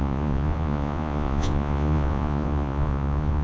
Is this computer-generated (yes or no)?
yes